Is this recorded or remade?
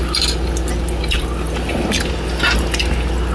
recorded